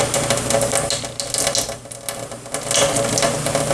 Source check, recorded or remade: recorded